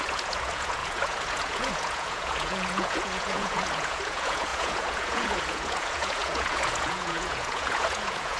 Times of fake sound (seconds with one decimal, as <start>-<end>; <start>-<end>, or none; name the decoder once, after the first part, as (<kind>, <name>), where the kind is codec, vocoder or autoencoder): 0.0-8.4 (vocoder, Vocos)